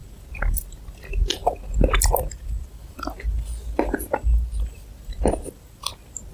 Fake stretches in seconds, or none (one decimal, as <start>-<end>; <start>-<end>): none